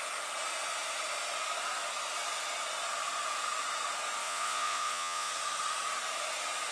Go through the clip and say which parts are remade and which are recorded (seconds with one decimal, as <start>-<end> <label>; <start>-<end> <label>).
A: 0.0-4.2 recorded; 4.2-5.3 remade; 5.3-6.7 recorded